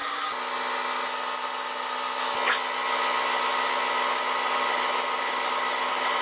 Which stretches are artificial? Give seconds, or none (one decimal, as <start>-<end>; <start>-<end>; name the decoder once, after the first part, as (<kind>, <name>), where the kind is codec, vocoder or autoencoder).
none